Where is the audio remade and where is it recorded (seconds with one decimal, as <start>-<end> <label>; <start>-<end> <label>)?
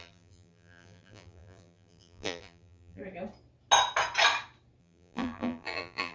0.0-3.0 remade; 3.0-4.8 recorded; 4.8-6.1 remade